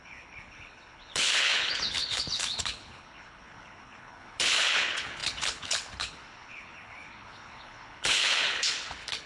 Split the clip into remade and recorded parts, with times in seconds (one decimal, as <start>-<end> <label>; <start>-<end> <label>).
0.0-9.3 remade